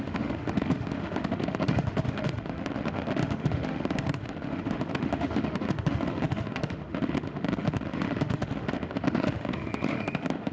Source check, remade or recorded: remade